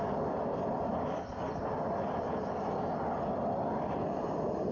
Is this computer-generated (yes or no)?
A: no